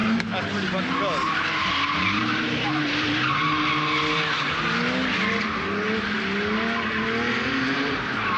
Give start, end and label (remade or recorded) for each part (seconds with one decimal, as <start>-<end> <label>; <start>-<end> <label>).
0.0-2.0 recorded; 2.0-3.4 remade; 3.4-7.5 recorded; 7.5-8.4 remade